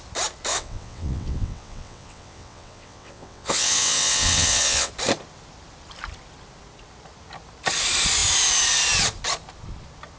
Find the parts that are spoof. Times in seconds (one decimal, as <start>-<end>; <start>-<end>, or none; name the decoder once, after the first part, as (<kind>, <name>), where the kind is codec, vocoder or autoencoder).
0.5-4.9 (vocoder, WaveNeXt)